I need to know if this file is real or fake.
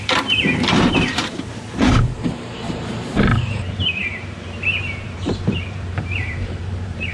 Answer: fake